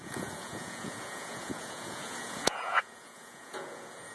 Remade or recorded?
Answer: remade